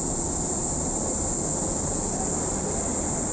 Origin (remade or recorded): recorded